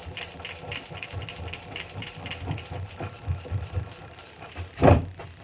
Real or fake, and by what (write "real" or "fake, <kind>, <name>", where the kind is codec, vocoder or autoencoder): fake, vocoder, BigVGAN v2